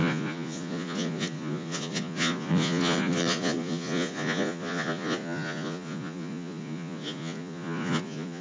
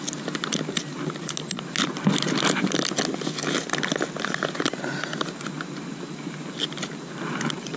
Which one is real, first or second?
second